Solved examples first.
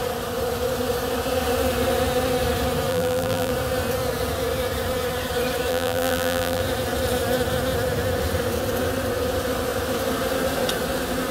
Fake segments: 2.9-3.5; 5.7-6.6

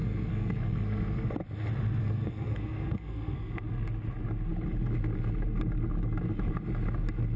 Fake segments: 0.0-1.3; 2.0-3.7

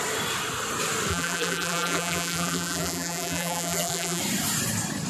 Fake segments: 1.1-4.2

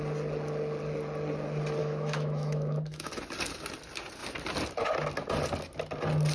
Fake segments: 1.8-3.1

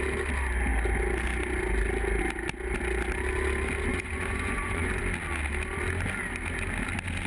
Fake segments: 3.9-5.0

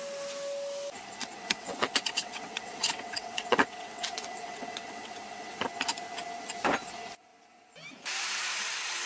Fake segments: 1.2-5.6